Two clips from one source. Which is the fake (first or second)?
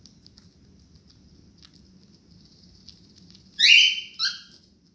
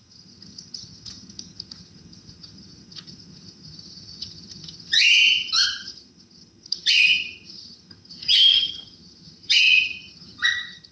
second